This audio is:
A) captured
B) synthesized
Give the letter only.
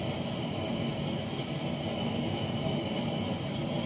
A